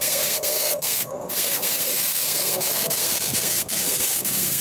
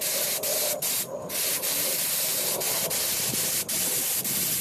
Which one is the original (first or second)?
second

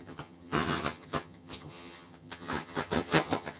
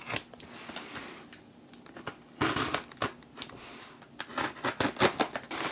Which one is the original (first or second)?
second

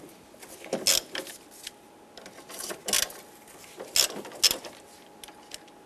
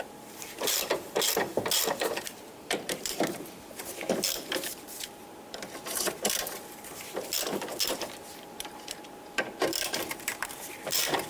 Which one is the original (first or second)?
first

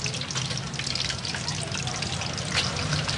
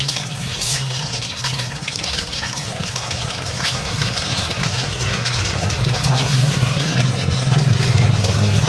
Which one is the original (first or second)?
first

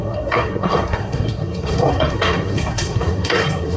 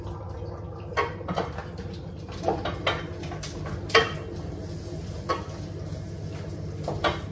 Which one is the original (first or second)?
second